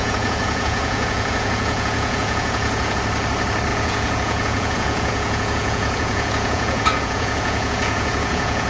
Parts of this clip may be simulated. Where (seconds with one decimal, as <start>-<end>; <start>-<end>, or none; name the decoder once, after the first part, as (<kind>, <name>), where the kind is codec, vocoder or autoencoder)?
0.0-3.0 (vocoder, Vocos); 3.7-8.7

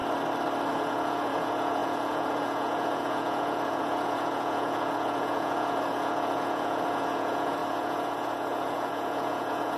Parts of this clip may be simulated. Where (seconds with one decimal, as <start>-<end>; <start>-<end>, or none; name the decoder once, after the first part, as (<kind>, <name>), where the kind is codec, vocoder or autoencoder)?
0.7-9.8 (vocoder, Vocos)

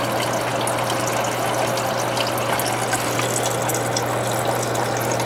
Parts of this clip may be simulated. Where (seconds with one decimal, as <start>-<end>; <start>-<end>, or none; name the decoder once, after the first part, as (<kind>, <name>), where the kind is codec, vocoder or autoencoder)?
none

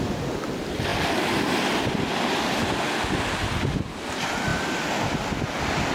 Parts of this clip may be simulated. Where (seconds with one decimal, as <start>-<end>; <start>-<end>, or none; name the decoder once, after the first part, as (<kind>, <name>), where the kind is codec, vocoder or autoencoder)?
none